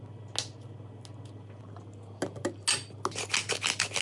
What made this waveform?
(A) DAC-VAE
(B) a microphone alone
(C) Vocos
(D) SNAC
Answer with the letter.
B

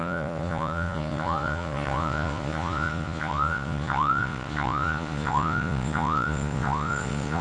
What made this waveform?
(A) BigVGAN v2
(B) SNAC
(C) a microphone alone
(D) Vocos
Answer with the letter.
D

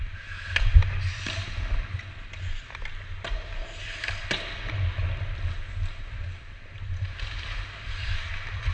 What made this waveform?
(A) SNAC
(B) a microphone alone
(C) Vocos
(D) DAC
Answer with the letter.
B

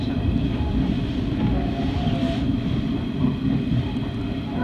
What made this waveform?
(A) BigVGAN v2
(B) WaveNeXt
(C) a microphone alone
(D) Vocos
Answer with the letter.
C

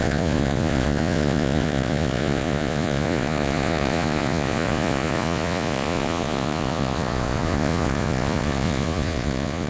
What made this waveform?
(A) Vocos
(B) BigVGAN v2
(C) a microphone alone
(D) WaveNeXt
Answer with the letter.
A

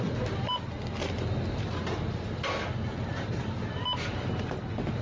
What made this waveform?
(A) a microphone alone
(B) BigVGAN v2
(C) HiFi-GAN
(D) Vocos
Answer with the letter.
A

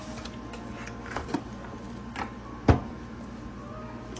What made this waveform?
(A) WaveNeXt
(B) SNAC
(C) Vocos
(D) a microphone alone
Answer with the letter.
D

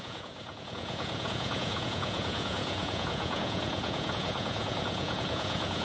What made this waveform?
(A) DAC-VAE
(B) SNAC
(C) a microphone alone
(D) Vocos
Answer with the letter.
D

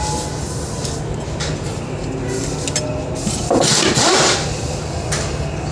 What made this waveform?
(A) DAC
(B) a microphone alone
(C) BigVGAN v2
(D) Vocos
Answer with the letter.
B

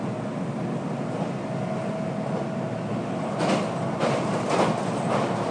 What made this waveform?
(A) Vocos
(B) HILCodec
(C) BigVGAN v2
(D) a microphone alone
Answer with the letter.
D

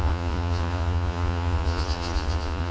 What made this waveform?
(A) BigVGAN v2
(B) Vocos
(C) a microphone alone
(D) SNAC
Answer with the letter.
B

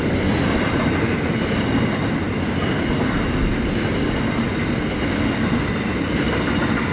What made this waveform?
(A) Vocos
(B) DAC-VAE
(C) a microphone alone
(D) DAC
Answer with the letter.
C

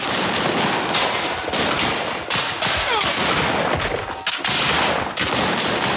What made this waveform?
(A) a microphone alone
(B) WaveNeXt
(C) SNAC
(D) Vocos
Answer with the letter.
A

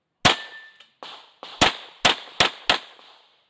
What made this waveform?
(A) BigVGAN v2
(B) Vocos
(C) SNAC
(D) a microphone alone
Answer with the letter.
D